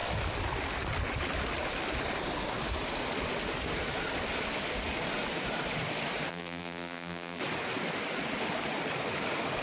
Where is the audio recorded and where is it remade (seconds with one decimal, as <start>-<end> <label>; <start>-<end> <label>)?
0.0-6.3 recorded; 6.3-7.4 remade; 7.4-9.6 recorded